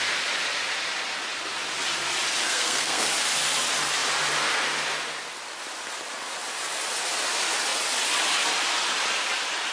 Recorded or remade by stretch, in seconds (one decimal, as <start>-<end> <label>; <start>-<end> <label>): 0.0-2.4 recorded; 2.4-3.1 remade; 3.1-9.7 recorded